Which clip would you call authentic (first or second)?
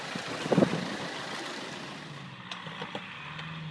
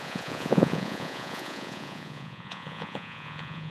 first